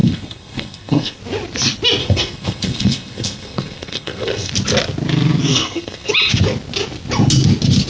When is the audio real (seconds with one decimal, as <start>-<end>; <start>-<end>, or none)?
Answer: 1.2-2.0; 4.5-5.5; 6.1-7.9